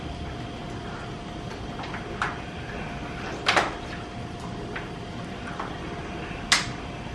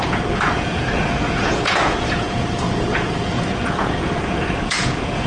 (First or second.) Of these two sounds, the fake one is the second